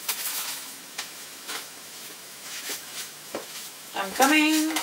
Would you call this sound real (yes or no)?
no